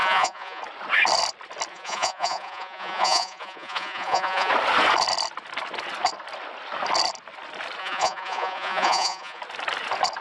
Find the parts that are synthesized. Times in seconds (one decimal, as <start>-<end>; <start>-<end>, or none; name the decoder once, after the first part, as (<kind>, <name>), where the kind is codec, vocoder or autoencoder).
0.0-0.6 (vocoder, Vocos); 1.7-4.5; 7.8-9.4